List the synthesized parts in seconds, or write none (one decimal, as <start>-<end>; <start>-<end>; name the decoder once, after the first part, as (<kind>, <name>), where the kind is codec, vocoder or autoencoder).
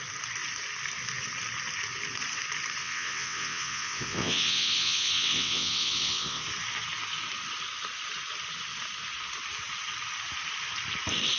2.8-6.4 (vocoder, WaveNeXt)